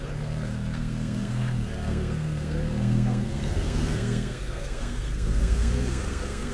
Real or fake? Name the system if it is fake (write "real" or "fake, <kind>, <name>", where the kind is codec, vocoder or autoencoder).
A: fake, codec, SNAC